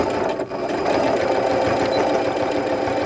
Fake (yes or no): no